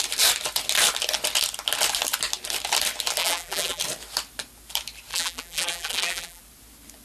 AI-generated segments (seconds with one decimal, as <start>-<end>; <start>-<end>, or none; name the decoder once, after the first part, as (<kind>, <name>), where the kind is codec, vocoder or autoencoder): 3.2-3.8 (vocoder, BigVGAN v2); 5.1-6.4